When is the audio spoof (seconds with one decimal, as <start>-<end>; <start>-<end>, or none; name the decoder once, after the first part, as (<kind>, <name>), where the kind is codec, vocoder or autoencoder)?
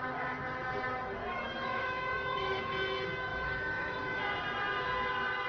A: 1.2-2.6 (autoencoder, DAC-VAE); 3.3-4.2